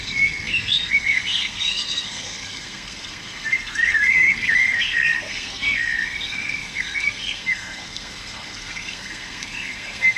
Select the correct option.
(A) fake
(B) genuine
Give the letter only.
A